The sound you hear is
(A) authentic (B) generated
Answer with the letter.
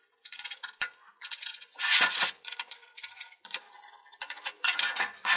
B